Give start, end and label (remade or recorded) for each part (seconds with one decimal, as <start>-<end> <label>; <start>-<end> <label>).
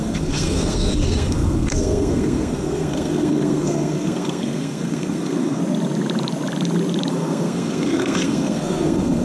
0.0-5.6 remade; 5.6-7.1 recorded; 7.1-9.2 remade